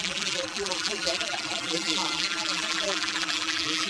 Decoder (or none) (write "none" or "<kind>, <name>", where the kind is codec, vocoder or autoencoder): vocoder, BigVGAN v2